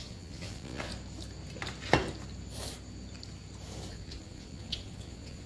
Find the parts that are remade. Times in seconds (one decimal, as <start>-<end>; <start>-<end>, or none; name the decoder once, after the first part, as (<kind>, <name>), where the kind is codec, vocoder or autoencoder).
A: 0.0-0.9 (vocoder, Vocos); 3.9-5.5